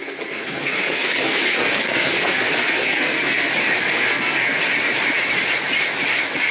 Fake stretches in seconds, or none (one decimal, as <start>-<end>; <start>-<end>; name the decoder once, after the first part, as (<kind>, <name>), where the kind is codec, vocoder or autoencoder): 0.0-3.5 (codec, SNAC); 3.9-4.6